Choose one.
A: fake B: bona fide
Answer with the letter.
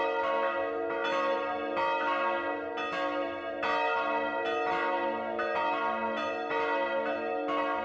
B